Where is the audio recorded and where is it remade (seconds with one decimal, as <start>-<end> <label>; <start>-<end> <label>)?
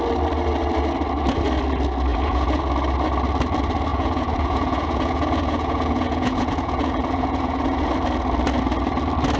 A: 0.0-2.1 recorded; 2.1-2.6 remade; 2.6-3.9 recorded; 3.9-7.9 remade; 7.9-9.4 recorded